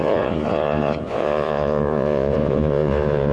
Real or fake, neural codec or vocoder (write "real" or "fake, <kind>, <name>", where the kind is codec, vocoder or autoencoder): fake, vocoder, Vocos